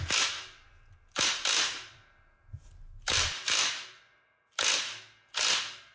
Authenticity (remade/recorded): recorded